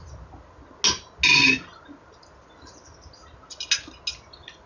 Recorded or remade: recorded